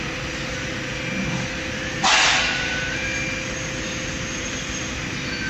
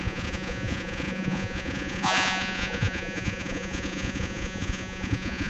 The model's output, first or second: second